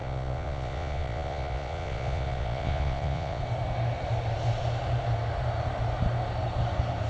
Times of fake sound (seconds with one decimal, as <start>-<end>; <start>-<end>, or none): 0.0-3.4